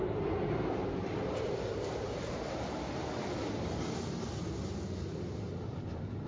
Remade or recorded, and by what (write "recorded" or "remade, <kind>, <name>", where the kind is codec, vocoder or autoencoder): remade, vocoder, BigVGAN v2